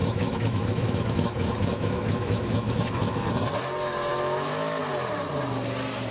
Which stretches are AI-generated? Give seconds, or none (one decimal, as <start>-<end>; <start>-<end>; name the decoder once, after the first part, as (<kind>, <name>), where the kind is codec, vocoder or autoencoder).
0.0-3.3 (autoencoder, DAC-VAE); 4.1-4.8